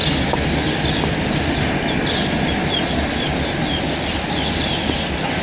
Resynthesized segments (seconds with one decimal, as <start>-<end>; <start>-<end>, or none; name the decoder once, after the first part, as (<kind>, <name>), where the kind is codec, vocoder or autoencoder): none